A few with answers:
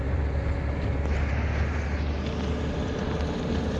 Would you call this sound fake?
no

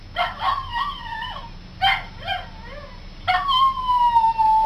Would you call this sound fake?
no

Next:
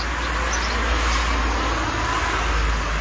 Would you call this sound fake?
no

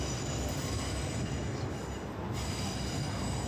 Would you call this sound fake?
no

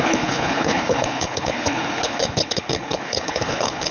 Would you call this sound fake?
yes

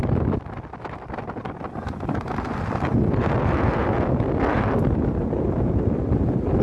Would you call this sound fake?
no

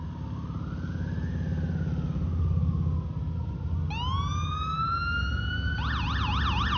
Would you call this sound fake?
no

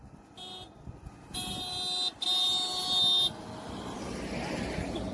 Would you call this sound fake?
no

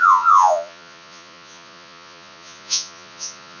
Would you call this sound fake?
yes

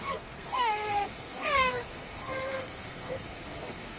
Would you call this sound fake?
yes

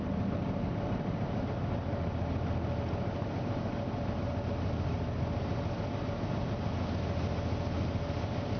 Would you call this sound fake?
no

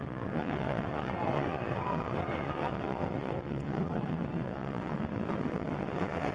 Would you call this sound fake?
yes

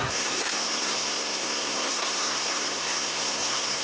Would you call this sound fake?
yes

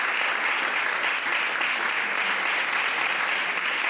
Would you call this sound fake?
no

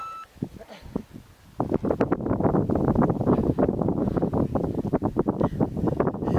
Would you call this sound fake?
no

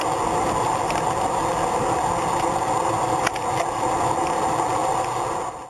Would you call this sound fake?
no